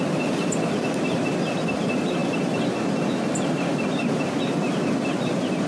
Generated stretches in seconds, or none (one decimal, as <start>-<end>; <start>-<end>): none